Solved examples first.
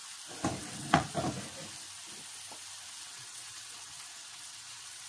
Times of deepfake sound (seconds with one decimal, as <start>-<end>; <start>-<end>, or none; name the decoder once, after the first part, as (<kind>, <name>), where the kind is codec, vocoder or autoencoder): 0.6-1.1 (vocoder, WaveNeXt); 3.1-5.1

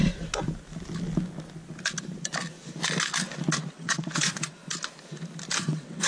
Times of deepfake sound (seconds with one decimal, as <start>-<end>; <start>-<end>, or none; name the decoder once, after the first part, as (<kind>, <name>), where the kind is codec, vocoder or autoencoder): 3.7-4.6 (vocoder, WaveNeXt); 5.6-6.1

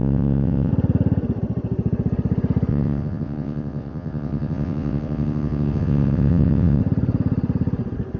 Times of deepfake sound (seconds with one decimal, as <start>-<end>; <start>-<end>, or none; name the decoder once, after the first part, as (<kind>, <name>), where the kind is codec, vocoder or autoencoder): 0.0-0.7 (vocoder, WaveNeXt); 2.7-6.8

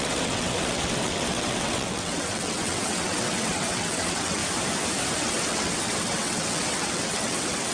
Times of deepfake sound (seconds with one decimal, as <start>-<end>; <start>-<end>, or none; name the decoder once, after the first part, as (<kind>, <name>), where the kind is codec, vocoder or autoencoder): 0.0-4.4 (vocoder, WaveNeXt); 5.1-7.7

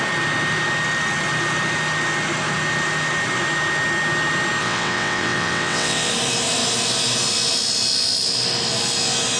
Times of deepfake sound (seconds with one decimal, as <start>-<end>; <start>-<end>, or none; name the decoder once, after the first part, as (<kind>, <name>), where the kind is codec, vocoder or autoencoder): 4.6-6.1 (vocoder, WaveNeXt)